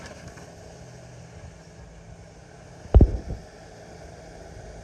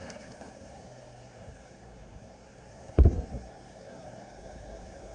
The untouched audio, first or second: first